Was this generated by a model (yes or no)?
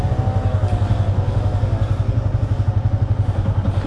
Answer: no